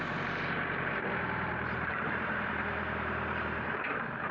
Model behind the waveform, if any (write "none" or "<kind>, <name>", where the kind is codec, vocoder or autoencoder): vocoder, BigVGAN v2